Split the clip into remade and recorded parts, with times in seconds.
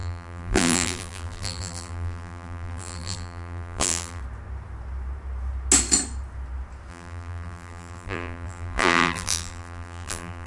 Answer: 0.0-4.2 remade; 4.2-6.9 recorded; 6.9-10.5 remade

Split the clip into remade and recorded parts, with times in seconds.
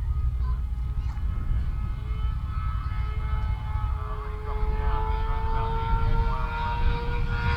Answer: 0.0-7.6 recorded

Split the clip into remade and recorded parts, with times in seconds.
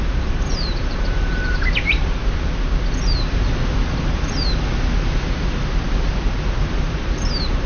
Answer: 0.0-2.2 remade; 2.2-6.6 recorded; 6.6-7.7 remade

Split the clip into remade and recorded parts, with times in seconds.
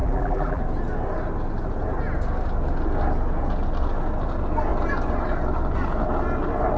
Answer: 0.0-0.6 remade; 0.6-6.8 recorded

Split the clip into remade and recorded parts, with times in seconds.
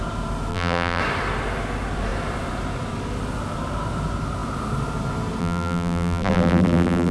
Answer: 0.0-0.5 recorded; 0.5-1.0 remade; 1.0-5.4 recorded; 5.4-7.1 remade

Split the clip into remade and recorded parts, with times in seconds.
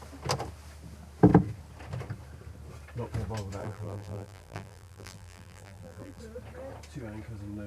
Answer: 0.0-3.6 recorded; 3.6-6.2 remade; 6.2-7.7 recorded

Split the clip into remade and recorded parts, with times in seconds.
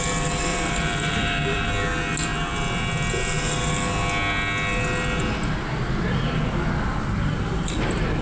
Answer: 0.0-0.5 recorded; 0.5-1.7 remade; 1.7-8.2 recorded